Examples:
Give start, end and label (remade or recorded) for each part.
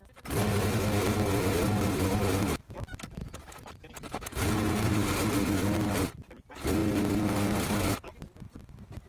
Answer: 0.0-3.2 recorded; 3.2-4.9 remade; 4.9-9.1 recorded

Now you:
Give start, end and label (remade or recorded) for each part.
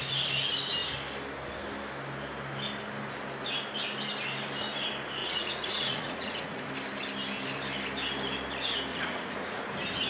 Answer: 0.0-5.2 recorded; 5.2-6.7 remade; 6.7-8.9 recorded; 8.9-9.6 remade; 9.6-10.1 recorded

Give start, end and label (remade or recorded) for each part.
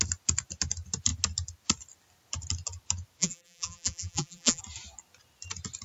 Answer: 0.0-3.2 recorded; 3.2-4.6 remade; 4.6-5.8 recorded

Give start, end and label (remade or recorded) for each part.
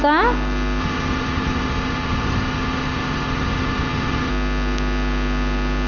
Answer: 0.0-0.8 recorded; 0.8-4.3 remade; 4.3-5.9 recorded